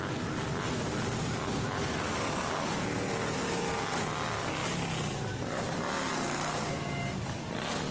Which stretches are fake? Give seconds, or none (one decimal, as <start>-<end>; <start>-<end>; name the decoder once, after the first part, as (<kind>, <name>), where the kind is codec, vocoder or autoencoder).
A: none